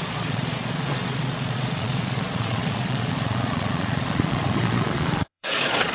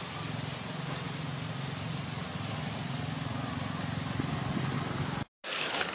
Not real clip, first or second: first